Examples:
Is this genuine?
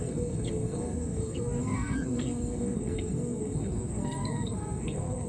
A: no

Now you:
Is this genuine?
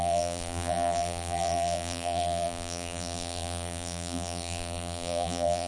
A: no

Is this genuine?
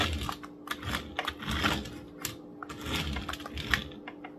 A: yes